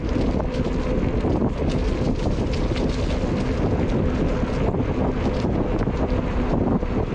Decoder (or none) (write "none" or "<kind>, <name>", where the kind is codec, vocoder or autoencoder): none